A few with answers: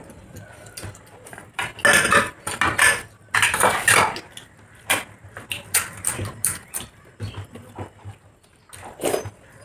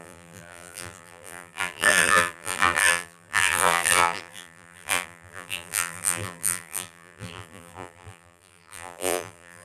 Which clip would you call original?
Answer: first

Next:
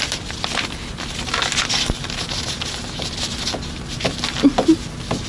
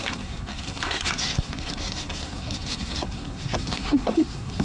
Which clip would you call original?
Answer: first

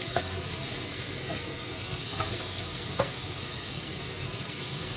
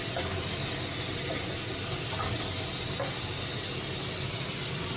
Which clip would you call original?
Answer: second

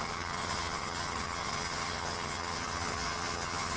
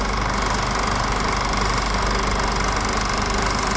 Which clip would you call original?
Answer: second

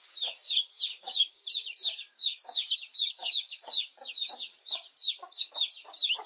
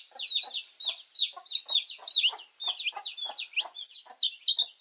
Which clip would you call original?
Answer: second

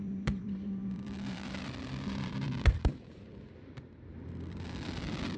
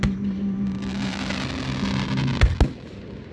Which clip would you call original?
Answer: second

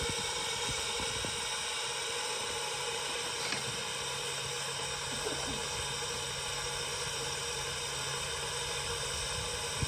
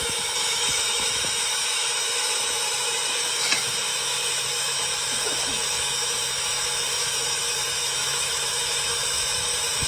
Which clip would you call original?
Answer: first